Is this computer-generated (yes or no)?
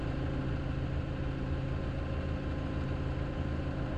no